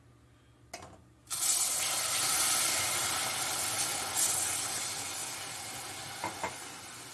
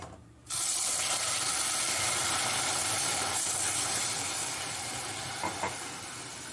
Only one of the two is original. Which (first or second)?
first